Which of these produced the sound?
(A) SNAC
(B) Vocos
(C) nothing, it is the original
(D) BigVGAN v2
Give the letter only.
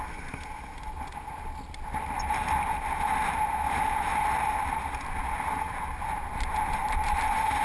C